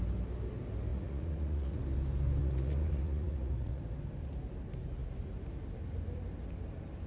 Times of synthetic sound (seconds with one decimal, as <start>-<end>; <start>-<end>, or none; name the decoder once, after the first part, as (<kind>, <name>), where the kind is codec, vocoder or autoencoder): 0.9-1.8 (vocoder, Vocos); 2.4-3.8